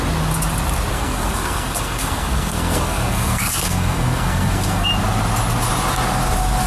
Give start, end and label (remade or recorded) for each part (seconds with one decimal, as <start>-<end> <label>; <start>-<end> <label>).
0.0-0.9 recorded; 0.9-4.9 remade; 4.9-6.7 recorded